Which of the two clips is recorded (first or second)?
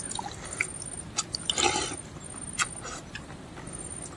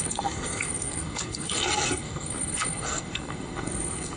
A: first